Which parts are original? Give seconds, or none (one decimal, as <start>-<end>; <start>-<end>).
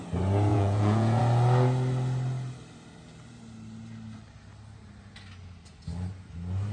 0.0-0.5; 1.2-6.7